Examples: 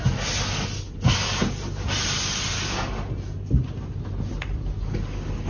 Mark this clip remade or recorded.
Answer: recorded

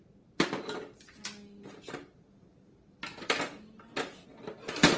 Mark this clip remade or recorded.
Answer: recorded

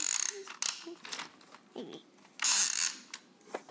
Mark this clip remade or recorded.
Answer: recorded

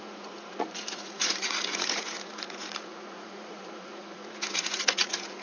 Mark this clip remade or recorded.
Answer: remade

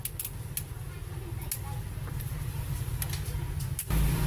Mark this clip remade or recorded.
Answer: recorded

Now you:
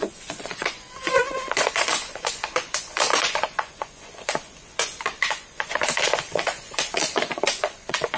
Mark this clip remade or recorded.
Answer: remade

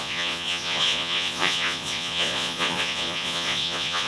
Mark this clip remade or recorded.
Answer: remade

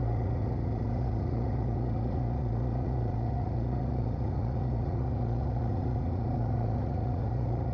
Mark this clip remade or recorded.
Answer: remade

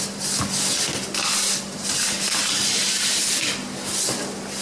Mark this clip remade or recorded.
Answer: recorded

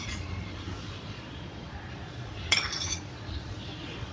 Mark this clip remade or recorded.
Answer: remade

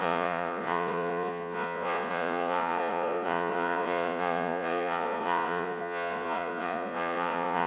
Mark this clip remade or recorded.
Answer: remade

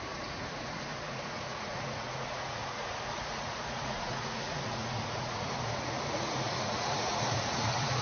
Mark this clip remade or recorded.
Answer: remade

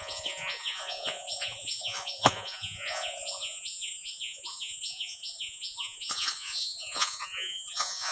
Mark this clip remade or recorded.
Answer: remade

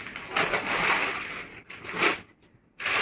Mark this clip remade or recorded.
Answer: recorded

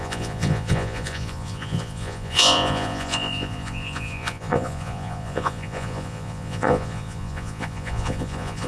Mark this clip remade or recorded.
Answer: remade